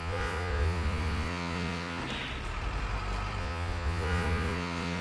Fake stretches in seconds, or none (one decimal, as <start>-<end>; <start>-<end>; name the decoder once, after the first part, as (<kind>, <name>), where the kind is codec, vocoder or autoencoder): 0.0-2.0 (vocoder, Vocos); 3.4-5.0

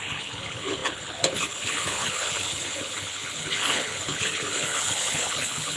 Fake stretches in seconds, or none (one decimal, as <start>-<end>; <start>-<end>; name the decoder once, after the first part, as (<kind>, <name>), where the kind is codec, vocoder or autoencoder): 0.0-5.8 (codec, HILCodec)

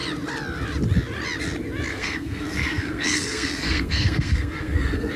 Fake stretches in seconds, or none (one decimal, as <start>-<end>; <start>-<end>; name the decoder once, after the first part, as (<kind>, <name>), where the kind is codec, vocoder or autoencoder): 1.9-5.2 (codec, SNAC)

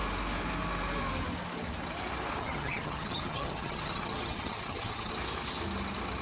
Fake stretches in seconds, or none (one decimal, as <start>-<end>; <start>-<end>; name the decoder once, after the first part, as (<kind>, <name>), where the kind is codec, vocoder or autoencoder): 2.4-5.1 (vocoder, HiFi-GAN)

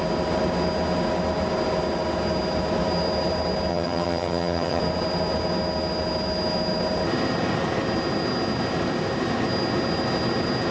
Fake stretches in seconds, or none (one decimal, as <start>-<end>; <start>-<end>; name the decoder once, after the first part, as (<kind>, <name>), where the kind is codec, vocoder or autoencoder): 3.7-4.8 (vocoder, HiFi-GAN)

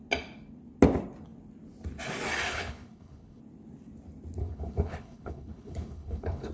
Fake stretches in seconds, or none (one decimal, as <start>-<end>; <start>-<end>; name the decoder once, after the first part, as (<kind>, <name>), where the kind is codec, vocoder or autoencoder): 2.5-3.4 (codec, HILCodec); 4.4-6.5

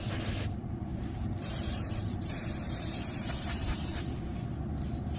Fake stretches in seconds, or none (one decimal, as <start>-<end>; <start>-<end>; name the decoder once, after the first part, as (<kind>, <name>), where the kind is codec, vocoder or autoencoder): 0.9-4.0 (vocoder, BigVGAN v2)